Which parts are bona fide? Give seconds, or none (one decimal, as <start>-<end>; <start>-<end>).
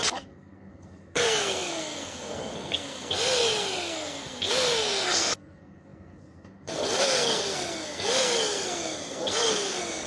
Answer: none